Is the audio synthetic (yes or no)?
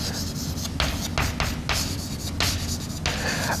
no